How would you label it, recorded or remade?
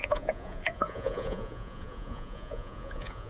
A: remade